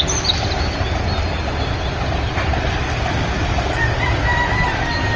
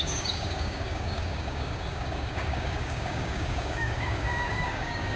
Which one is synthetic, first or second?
second